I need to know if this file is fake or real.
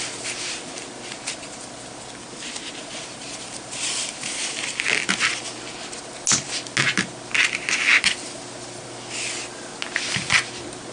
real